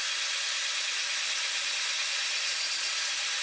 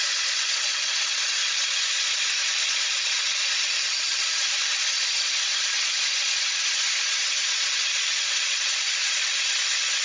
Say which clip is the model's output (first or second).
second